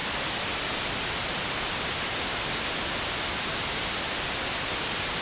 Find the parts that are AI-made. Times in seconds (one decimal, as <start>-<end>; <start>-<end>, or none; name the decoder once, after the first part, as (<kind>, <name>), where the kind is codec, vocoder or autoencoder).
none